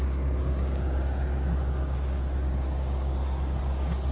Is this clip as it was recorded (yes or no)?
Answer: no